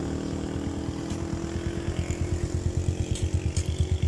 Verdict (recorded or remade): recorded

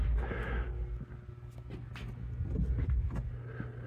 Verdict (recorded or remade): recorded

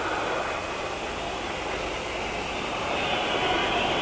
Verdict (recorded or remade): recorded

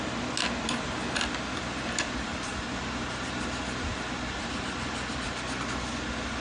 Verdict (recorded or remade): recorded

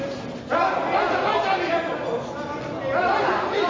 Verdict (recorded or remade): recorded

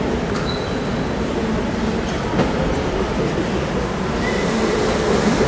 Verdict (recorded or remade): recorded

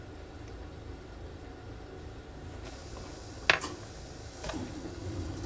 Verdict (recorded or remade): recorded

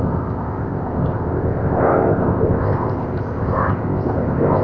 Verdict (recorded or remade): remade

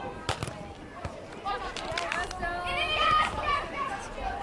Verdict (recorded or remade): recorded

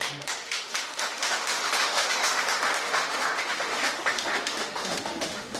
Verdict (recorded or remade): remade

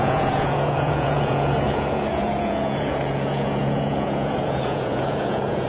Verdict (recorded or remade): remade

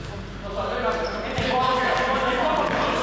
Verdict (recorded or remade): recorded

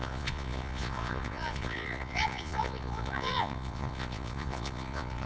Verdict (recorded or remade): remade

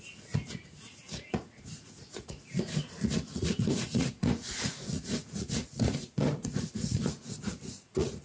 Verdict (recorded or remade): remade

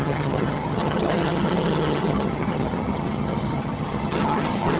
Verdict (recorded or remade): remade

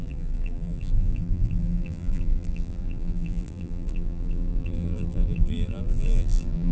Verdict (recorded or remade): remade